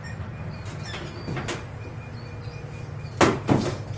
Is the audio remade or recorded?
recorded